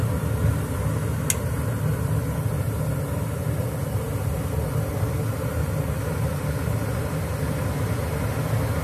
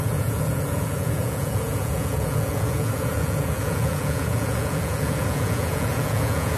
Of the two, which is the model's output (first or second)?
second